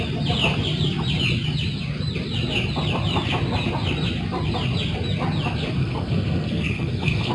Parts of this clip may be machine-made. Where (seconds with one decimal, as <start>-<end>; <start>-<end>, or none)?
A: 5.8-7.3